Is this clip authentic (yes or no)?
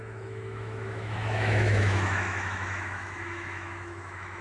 no